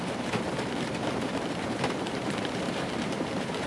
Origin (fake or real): fake